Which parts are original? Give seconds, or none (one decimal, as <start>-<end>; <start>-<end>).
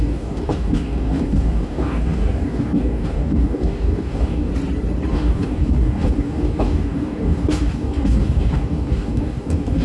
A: 4.5-5.1